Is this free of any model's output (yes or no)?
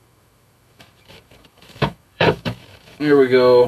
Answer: no